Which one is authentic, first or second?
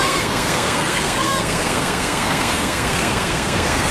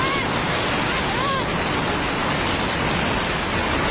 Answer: second